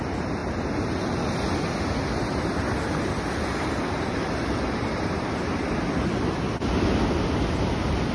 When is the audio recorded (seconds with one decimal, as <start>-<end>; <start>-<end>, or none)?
0.0-8.1